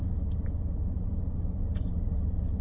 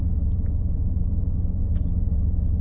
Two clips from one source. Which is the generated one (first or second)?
first